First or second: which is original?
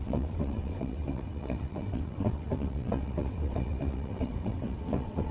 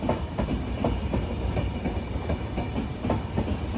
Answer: second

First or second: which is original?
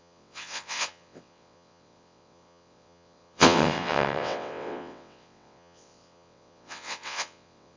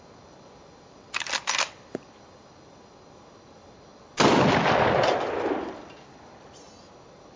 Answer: second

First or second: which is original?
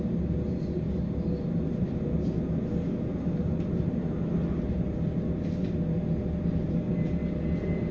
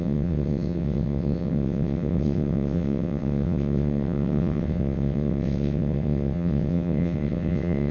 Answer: first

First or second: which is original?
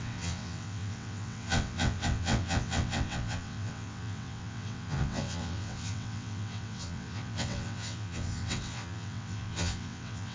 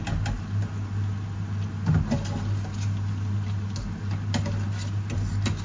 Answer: second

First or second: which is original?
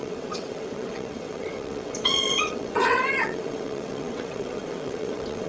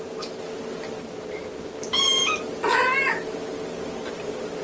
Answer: second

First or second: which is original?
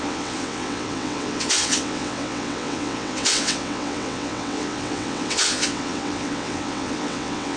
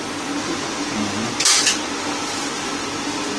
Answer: second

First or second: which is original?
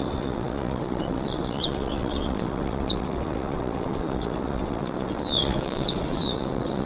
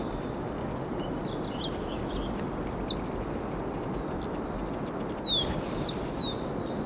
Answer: second